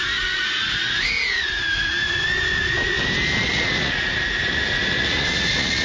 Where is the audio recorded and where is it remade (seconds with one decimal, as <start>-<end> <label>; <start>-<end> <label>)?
0.0-1.9 remade; 1.9-3.4 recorded; 3.4-5.8 remade